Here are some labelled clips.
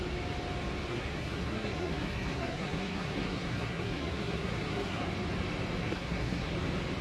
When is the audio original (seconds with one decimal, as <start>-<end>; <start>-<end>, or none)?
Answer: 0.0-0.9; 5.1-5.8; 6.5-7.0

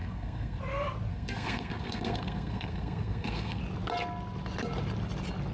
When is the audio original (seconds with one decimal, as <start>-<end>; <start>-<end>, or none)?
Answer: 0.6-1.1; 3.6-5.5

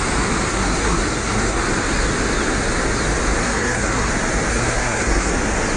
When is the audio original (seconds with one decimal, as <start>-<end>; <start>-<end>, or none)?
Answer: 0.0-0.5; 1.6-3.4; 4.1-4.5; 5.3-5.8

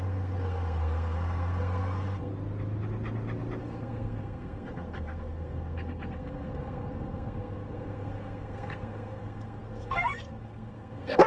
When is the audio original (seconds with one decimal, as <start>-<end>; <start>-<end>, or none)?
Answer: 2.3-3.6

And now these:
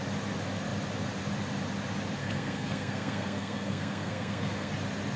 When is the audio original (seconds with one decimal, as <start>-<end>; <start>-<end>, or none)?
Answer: 0.0-2.2; 4.7-5.2

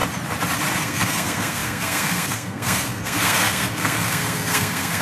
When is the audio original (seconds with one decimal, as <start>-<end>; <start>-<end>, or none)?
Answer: 0.0-0.8

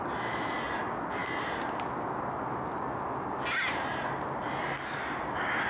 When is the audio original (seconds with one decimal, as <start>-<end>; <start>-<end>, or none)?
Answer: 0.0-5.7